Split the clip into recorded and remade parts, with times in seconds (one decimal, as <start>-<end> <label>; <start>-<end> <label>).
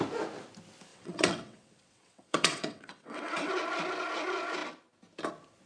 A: 0.0-0.9 recorded; 0.9-3.5 remade; 3.5-5.7 recorded